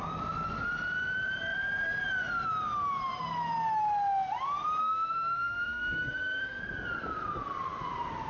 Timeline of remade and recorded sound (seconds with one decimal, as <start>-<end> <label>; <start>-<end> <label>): 0.0-4.8 recorded; 4.8-6.6 remade; 6.6-8.3 recorded